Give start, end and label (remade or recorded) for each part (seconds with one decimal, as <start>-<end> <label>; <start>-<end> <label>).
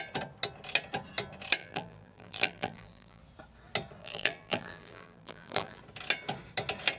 0.0-1.6 recorded; 1.6-3.2 remade; 3.2-4.0 recorded; 4.0-5.8 remade; 5.8-7.0 recorded